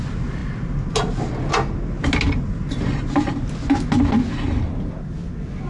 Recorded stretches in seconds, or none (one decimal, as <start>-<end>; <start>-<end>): 0.0-5.7